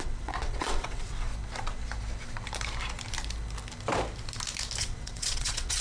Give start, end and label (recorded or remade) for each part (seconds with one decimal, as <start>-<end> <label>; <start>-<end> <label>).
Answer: 0.0-1.3 remade; 1.3-4.8 recorded; 4.8-5.8 remade